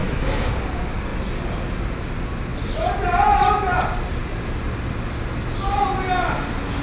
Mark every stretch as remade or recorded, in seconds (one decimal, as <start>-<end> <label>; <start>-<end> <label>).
0.0-0.5 remade; 0.5-6.8 recorded

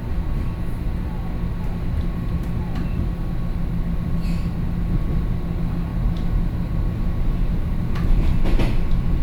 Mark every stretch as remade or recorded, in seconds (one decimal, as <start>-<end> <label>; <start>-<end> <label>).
0.0-9.2 recorded

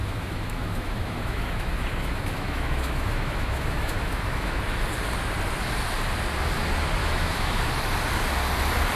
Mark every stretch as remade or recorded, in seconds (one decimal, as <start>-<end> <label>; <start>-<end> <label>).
0.0-4.6 remade; 4.6-7.0 recorded; 7.0-7.7 remade; 7.7-9.0 recorded

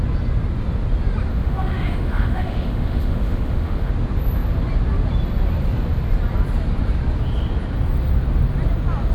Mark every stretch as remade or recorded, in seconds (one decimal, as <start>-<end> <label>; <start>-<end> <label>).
0.0-1.3 recorded; 1.3-3.9 remade; 3.9-9.1 recorded

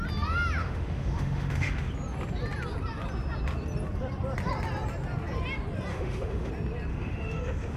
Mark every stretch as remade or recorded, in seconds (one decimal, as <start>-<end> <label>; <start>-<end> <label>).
0.0-0.6 recorded; 0.6-1.9 remade; 1.9-5.9 recorded; 5.9-6.5 remade; 6.5-6.9 recorded; 6.9-7.8 remade